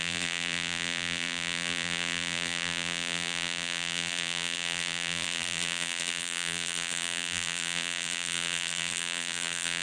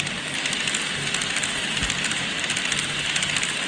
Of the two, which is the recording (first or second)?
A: second